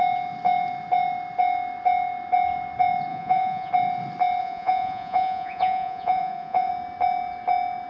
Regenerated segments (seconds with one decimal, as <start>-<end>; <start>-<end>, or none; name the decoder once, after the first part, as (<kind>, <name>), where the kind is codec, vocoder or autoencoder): 3.1-3.7 (vocoder, Vocos); 4.4-6.7